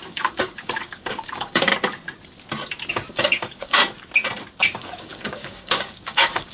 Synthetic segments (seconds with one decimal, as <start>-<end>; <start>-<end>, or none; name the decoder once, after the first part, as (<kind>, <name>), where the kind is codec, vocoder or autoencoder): 0.0-1.7 (codec, DAC); 2.9-3.8; 4.6-6.5